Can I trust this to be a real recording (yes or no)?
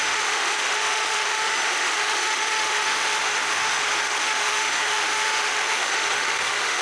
no